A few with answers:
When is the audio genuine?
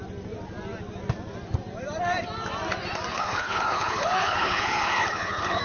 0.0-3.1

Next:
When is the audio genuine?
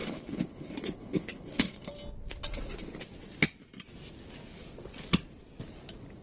1.9-6.2